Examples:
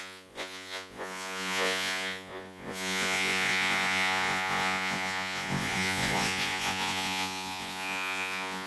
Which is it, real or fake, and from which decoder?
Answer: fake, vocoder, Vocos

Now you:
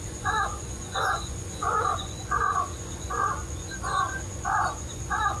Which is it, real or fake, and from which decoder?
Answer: fake, vocoder, Vocos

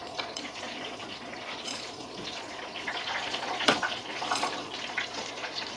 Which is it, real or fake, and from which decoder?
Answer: fake, vocoder, Vocos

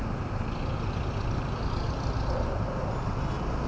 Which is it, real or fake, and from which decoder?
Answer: real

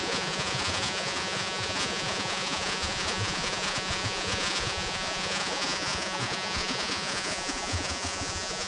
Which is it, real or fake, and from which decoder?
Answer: fake, vocoder, Vocos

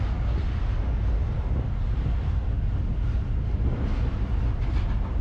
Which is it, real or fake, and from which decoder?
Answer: real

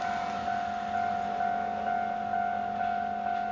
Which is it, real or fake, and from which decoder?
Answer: real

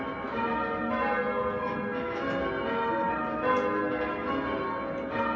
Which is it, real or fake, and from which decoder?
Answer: real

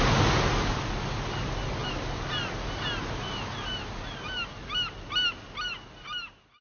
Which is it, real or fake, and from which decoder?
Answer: real